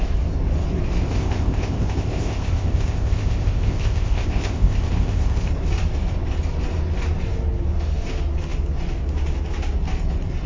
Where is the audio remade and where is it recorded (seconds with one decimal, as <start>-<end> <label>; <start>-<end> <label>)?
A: 0.0-1.0 recorded; 1.0-5.5 remade; 5.5-10.5 recorded